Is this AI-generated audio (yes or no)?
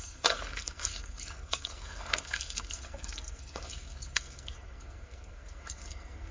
yes